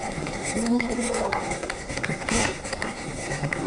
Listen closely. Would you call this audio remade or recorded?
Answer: remade